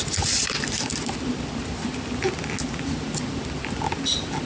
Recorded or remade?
recorded